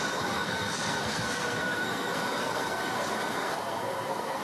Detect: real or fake fake